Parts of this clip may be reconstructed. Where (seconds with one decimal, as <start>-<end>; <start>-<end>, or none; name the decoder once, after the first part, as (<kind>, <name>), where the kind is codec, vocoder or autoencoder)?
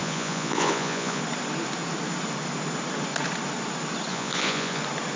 0.0-1.2 (vocoder, Vocos); 4.1-4.8